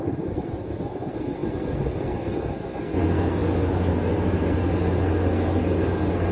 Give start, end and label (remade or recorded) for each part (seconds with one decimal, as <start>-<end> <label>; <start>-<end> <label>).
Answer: 0.0-6.3 remade